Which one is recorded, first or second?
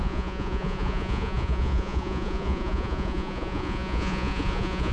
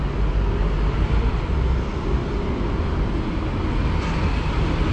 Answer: second